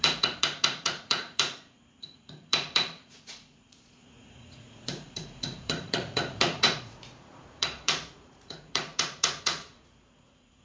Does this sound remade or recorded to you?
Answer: remade